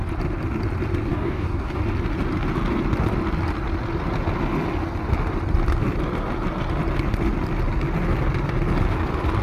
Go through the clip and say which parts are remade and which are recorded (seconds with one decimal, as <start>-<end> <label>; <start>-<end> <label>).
0.0-1.1 recorded; 1.1-1.8 remade; 1.8-9.4 recorded